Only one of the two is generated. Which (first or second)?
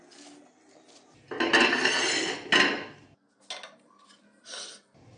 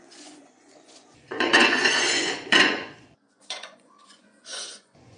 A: second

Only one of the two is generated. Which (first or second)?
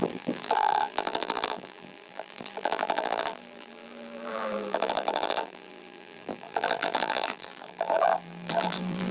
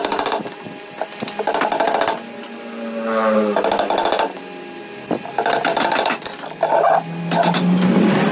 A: first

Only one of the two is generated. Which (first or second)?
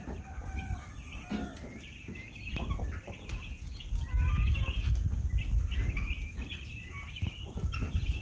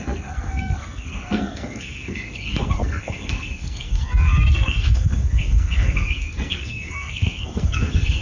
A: second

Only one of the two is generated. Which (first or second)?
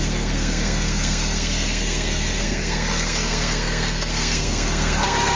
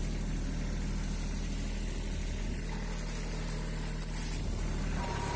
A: first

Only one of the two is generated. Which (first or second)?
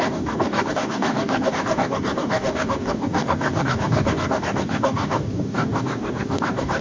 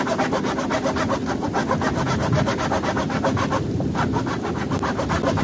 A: first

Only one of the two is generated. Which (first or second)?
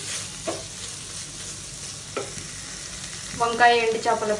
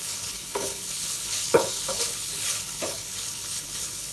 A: second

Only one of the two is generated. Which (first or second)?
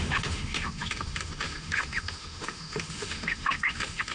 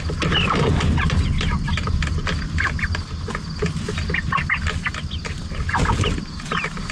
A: first